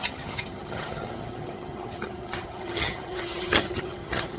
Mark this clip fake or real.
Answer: fake